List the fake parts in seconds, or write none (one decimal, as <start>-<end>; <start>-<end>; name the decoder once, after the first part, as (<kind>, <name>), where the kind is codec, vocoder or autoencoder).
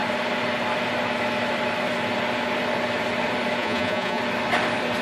3.6-4.2 (vocoder, Vocos)